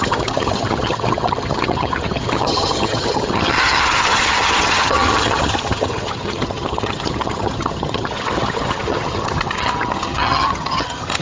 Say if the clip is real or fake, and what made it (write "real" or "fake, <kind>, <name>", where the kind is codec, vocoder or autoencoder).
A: fake, vocoder, HiFi-GAN